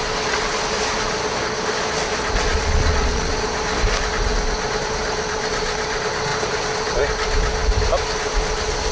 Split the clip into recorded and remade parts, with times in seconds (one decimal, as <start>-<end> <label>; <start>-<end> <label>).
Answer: 0.0-2.5 recorded; 2.5-3.3 remade; 3.3-8.9 recorded